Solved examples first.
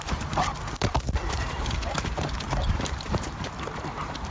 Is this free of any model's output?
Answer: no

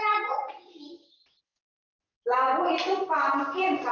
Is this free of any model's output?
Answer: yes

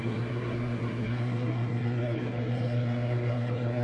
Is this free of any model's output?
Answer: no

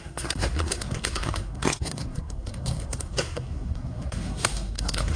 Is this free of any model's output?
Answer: no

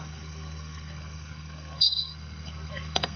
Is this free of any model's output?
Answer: no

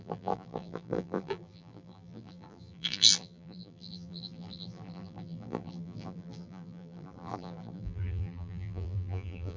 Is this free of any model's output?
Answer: no